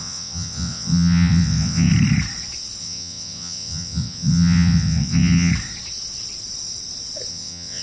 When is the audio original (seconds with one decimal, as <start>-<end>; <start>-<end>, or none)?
1.9-2.8; 5.5-7.3